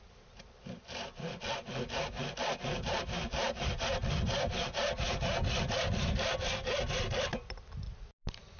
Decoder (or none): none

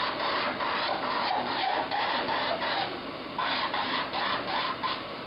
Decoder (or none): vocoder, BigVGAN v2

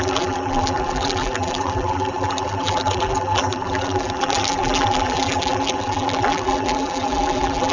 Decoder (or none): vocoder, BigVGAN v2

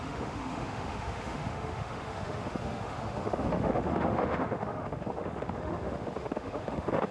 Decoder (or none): autoencoder, DAC-VAE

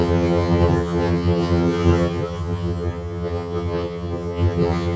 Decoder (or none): vocoder, HiFi-GAN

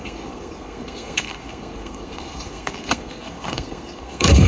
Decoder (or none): codec, SNAC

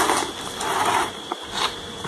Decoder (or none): none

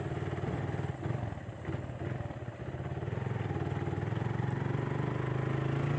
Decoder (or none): none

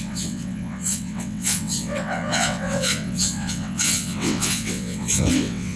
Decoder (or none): vocoder, WaveNeXt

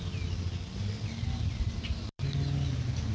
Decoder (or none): vocoder, BigVGAN v2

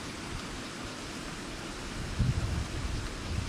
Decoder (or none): none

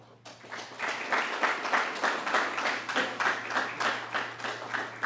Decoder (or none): none